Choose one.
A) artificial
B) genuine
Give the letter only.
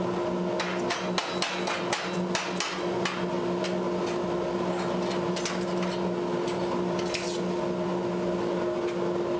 B